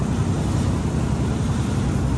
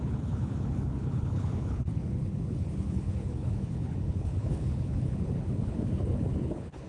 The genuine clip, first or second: first